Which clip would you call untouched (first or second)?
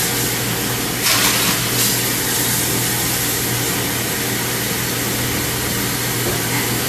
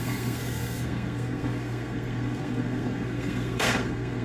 first